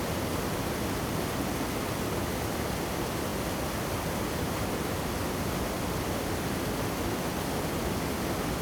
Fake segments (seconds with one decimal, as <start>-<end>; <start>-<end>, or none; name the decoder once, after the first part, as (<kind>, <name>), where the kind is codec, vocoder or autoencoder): none